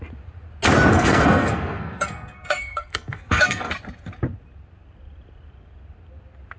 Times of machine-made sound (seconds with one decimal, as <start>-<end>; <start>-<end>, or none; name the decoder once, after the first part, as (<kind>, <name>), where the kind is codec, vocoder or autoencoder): 0.9-3.7 (codec, SNAC)